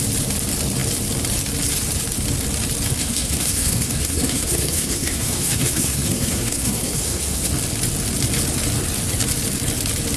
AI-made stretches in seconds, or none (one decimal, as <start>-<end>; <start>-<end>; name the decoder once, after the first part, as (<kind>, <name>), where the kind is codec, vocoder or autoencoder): 3.0-7.5 (codec, SNAC)